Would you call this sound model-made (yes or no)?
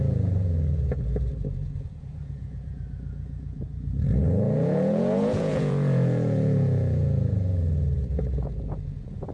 yes